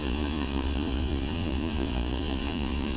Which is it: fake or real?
fake